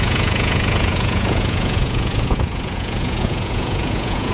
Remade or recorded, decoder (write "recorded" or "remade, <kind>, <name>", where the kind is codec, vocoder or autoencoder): remade, vocoder, Vocos